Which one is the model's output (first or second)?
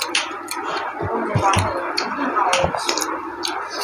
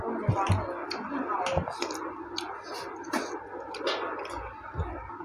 first